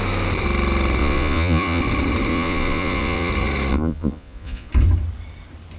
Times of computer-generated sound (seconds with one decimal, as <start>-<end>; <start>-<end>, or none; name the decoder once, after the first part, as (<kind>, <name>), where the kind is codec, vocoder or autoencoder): 1.0-1.8 (vocoder, Vocos); 2.3-3.3; 3.7-4.7